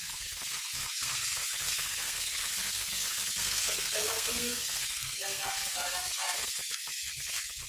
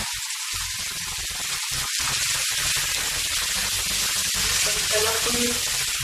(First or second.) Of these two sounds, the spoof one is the first